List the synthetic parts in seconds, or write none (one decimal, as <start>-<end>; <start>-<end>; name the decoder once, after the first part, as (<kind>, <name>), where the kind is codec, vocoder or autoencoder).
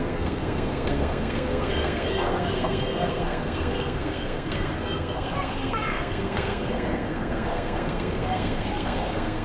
0.0-9.4 (codec, SNAC)